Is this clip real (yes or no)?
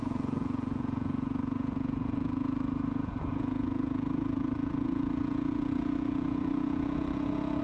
no